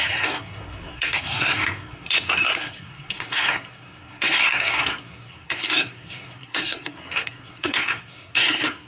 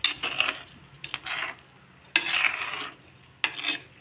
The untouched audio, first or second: second